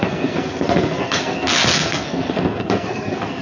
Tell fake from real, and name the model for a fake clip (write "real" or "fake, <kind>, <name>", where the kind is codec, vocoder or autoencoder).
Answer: fake, codec, SNAC